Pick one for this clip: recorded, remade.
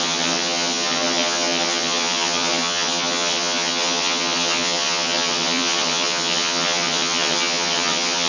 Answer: remade